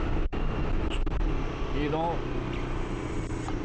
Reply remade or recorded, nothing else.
recorded